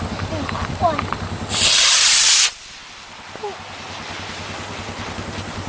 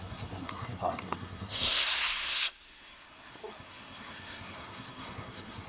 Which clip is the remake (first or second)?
second